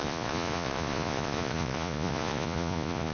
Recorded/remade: remade